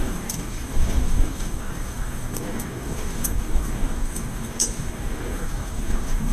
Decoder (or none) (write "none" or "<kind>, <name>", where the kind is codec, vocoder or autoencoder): codec, DAC